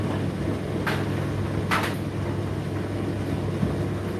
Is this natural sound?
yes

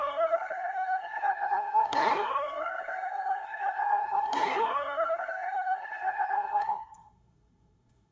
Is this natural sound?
no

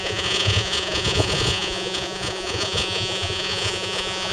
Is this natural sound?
no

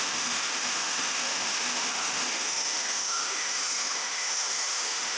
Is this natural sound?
no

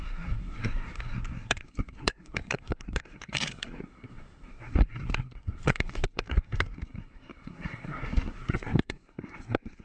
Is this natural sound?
no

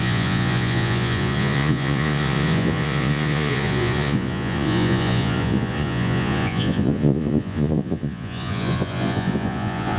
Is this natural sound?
no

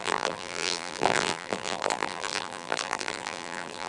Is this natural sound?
no